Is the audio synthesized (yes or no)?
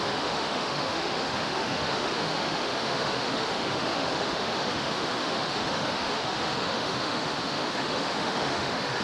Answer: yes